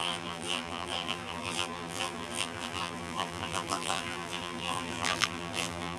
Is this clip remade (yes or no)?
yes